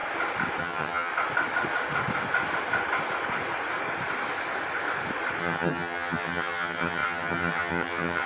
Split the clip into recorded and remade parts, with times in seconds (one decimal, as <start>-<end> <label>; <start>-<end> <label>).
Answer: 0.0-0.6 recorded; 0.6-1.1 remade; 1.1-5.4 recorded; 5.4-8.3 remade

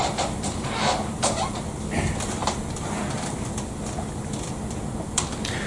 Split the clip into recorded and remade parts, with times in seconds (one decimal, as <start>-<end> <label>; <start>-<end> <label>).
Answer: 0.0-5.7 recorded